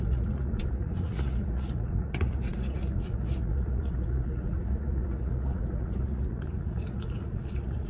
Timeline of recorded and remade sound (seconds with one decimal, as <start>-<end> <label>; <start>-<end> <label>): 0.0-7.9 remade